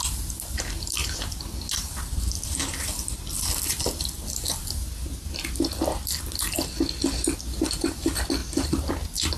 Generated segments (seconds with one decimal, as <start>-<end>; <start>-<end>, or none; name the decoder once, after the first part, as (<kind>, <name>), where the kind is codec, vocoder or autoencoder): none